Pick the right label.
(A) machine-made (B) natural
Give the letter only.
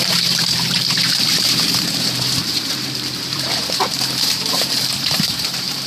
A